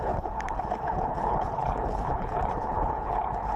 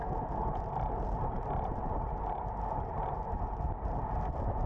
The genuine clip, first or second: second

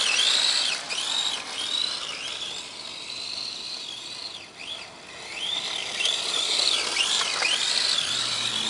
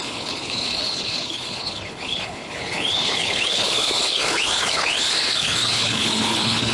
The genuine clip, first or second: first